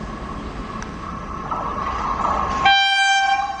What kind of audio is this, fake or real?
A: real